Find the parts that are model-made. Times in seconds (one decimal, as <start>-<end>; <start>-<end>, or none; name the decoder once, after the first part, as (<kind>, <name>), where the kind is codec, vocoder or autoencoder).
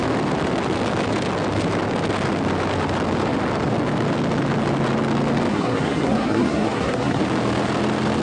5.5-7.2 (codec, SNAC)